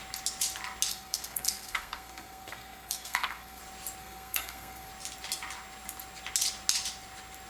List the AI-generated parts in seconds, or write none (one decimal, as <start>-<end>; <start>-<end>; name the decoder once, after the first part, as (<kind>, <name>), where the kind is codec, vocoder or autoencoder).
0.9-3.6 (codec, SNAC); 4.0-4.9